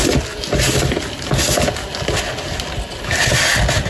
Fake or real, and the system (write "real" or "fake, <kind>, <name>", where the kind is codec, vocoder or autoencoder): real